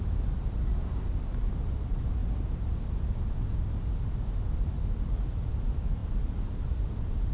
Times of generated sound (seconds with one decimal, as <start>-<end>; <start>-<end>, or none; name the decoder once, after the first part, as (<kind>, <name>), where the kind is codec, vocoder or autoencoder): none